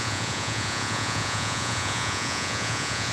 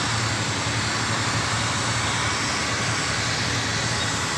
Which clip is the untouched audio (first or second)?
second